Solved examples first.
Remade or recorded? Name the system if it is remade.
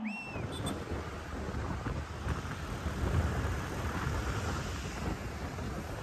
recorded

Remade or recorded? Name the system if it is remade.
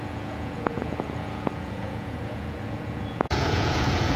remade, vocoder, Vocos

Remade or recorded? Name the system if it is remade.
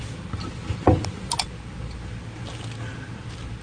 recorded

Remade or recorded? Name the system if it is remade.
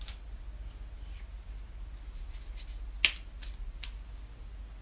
recorded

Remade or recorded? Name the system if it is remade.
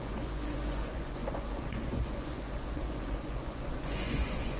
remade, vocoder, Vocos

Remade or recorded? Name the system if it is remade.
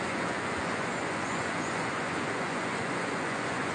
remade, vocoder, Vocos